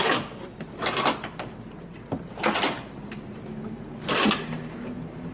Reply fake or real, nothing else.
real